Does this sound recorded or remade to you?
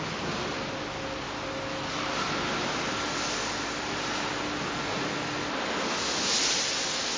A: recorded